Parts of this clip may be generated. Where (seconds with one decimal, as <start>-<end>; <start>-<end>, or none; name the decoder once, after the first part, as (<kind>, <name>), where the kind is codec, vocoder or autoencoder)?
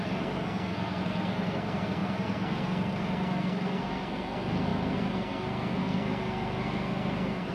0.0-7.5 (codec, SNAC)